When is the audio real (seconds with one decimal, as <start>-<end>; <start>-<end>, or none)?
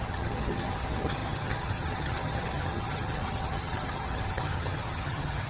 none